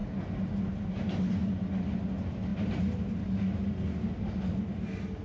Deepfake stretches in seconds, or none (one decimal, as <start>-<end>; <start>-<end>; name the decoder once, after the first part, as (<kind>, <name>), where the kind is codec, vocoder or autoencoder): none